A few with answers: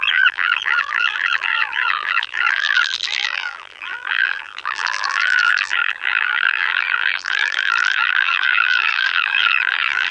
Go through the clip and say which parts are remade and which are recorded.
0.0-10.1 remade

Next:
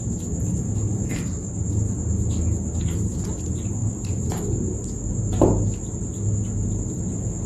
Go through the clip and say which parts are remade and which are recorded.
0.0-3.8 recorded; 3.8-5.0 remade; 5.0-7.5 recorded

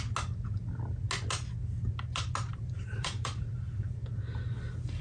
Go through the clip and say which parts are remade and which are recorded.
0.0-2.5 recorded; 2.5-3.8 remade; 3.8-5.0 recorded

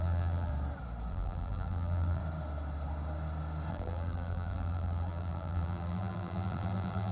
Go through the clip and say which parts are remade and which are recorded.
0.0-0.5 remade; 0.5-1.1 recorded; 1.1-2.2 remade; 2.2-3.7 recorded; 3.7-7.1 remade

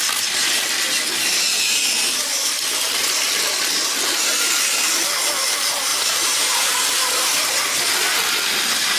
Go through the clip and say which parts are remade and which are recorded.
0.0-5.9 recorded; 5.9-7.5 remade; 7.5-9.0 recorded

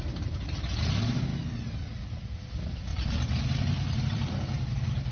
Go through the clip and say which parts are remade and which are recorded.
0.0-2.9 recorded; 2.9-4.3 remade; 4.3-5.1 recorded